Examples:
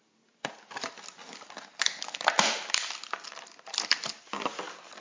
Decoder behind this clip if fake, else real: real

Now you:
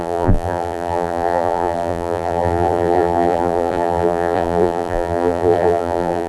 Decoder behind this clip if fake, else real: fake, vocoder, BigVGAN v2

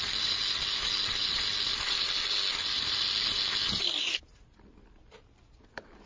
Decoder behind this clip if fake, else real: real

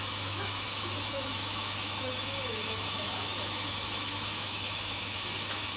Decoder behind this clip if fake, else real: fake, autoencoder, DAC-VAE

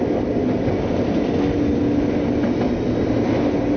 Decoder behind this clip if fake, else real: real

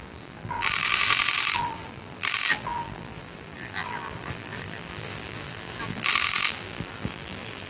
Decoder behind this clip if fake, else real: fake, vocoder, BigVGAN v2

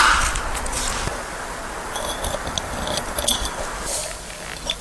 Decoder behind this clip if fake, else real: real